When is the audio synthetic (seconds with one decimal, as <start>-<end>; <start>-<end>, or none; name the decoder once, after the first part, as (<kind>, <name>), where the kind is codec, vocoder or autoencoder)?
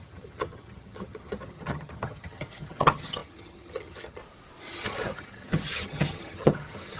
0.0-4.2 (vocoder, HiFi-GAN); 4.7-7.0